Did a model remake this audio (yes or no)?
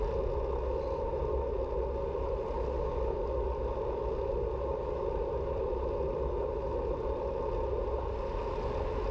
no